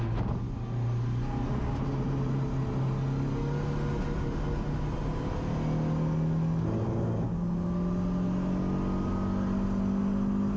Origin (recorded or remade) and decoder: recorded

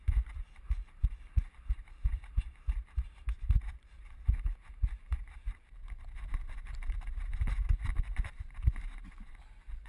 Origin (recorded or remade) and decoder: remade, vocoder, BigVGAN v2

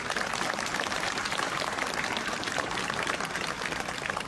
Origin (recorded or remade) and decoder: remade, vocoder, BigVGAN v2